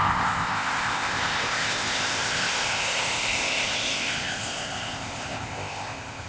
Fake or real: fake